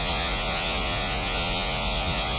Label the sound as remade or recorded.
remade